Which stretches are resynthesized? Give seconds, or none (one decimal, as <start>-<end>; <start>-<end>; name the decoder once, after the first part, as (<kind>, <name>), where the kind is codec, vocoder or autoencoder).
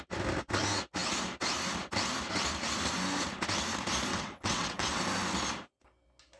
4.1-5.0 (vocoder, WaveNeXt)